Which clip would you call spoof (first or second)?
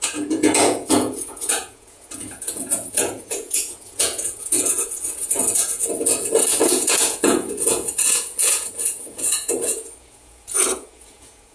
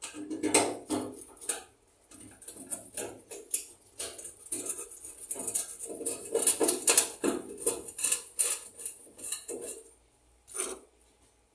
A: first